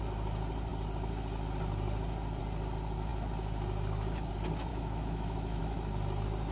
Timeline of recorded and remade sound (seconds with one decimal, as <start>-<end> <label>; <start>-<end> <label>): 0.0-4.7 recorded; 4.7-5.6 remade; 5.6-6.5 recorded